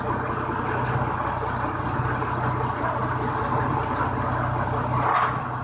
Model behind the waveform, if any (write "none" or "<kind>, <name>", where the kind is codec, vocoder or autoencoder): none